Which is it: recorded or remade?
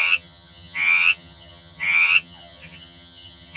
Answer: remade